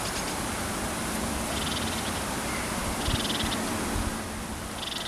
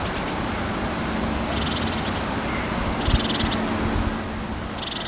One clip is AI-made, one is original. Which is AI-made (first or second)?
first